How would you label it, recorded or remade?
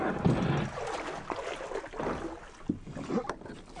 recorded